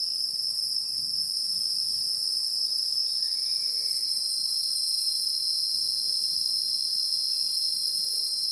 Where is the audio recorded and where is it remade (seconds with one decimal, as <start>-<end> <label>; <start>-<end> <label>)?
0.0-1.2 remade; 1.2-2.4 recorded; 2.4-5.3 remade; 5.3-7.5 recorded; 7.5-8.5 remade